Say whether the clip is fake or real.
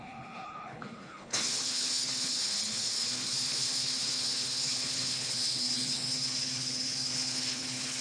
fake